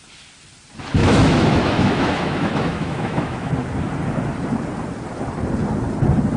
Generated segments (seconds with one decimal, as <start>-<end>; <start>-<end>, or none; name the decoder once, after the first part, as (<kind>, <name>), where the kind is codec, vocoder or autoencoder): 1.0-3.5 (autoencoder, DAC-VAE)